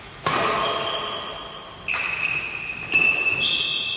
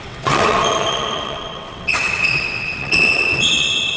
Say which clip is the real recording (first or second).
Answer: first